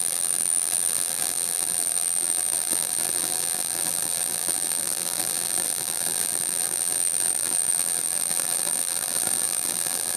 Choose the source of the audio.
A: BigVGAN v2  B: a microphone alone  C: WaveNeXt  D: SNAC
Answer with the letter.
A